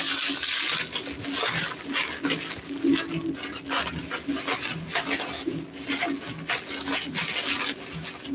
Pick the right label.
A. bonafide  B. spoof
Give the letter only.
A